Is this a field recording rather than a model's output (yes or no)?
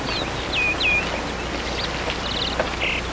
yes